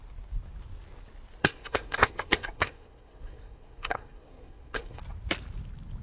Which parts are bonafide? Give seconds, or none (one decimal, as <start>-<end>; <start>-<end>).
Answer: 0.0-1.4; 5.0-6.0